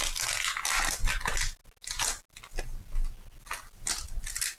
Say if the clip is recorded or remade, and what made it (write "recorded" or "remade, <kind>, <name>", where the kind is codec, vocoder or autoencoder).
recorded